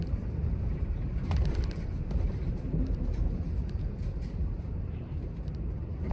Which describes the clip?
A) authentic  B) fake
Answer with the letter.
B